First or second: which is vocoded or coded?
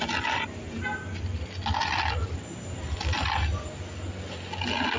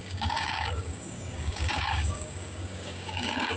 second